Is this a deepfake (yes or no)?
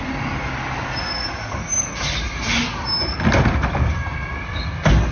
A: no